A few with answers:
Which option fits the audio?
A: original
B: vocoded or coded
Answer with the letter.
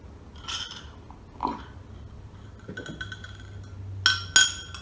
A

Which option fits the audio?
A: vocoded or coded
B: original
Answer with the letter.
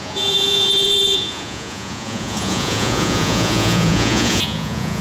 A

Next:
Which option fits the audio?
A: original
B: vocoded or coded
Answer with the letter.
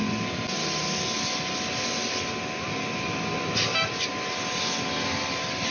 A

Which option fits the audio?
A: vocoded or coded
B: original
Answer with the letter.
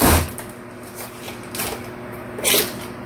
B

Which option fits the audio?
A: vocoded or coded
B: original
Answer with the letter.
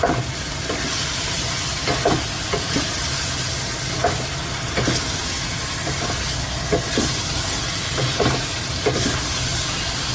B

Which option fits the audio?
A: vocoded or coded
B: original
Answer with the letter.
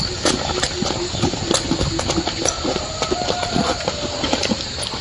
B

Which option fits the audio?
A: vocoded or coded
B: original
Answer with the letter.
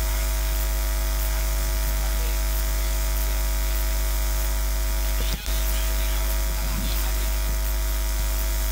B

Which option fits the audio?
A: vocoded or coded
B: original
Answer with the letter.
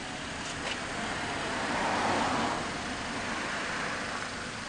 B